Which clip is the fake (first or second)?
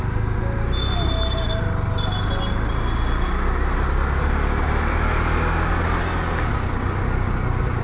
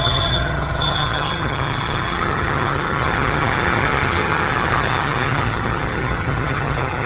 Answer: second